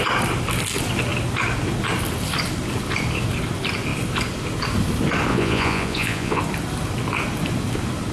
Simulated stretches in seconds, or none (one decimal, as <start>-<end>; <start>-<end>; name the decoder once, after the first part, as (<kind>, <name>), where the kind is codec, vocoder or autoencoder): 5.3-6.4 (vocoder, Vocos)